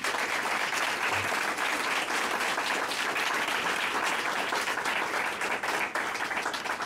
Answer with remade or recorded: recorded